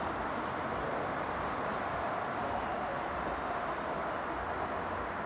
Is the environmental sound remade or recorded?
recorded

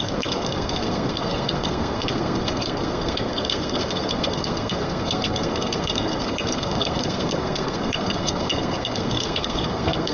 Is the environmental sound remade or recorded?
remade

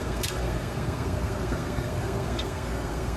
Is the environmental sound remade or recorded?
remade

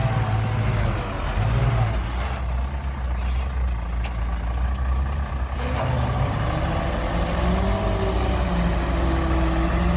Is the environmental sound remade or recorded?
recorded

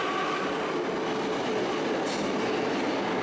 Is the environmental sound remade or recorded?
recorded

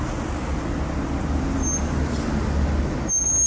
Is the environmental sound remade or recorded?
recorded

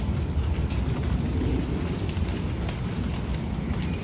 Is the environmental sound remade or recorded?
recorded